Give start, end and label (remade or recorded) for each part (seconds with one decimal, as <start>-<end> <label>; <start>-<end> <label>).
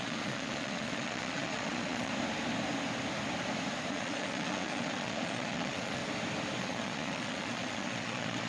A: 0.0-2.1 remade; 2.1-3.9 recorded; 3.9-6.0 remade; 6.0-6.6 recorded; 6.6-8.5 remade